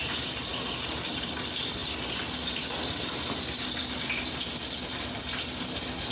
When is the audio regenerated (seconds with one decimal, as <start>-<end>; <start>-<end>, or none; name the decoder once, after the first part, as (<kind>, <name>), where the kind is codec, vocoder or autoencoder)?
none